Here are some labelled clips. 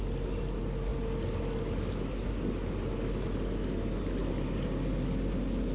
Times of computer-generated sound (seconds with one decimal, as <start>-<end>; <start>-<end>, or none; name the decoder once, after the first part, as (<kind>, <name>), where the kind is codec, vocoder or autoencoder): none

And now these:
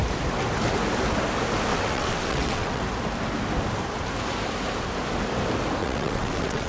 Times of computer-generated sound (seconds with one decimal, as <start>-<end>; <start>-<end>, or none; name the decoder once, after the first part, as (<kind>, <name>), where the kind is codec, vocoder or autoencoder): 1.7-2.8 (vocoder, WaveNeXt); 5.8-6.7

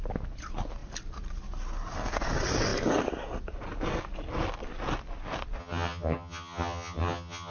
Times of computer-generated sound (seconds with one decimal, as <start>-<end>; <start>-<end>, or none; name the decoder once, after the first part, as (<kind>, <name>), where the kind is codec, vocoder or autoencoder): 5.6-7.5 (vocoder, HiFi-GAN)